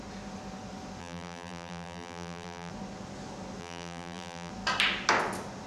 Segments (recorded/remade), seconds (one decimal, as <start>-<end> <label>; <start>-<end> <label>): 0.0-1.0 recorded; 1.0-2.7 remade; 2.7-3.6 recorded; 3.6-4.5 remade; 4.5-5.7 recorded